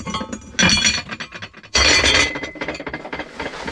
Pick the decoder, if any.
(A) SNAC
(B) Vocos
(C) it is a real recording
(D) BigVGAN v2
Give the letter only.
C